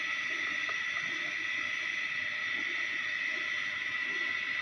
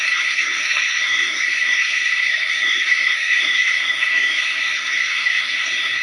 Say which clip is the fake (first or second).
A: second